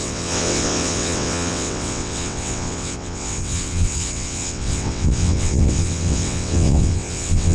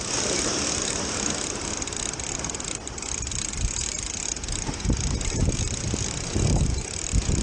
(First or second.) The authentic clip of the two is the second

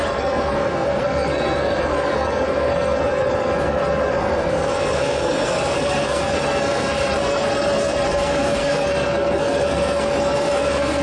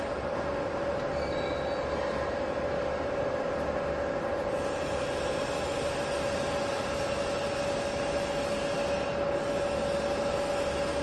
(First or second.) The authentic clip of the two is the second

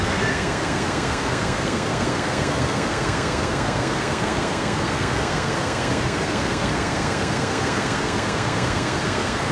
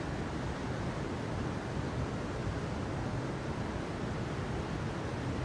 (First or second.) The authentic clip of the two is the second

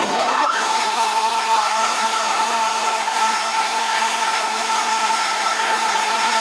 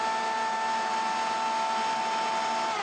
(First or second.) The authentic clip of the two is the second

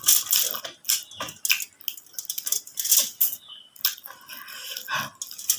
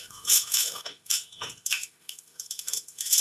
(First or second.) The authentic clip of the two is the first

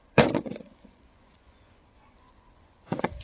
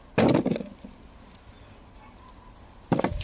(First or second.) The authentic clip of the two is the second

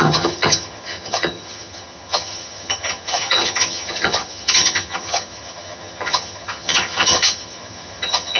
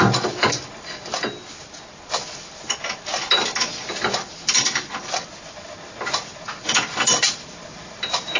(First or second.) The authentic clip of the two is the second